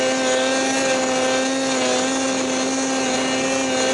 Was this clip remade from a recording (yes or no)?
no